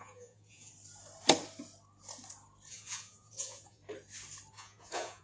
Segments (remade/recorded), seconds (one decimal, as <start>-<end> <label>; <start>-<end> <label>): 0.0-0.7 remade; 0.7-2.7 recorded; 2.7-3.8 remade; 3.8-4.5 recorded; 4.5-5.2 remade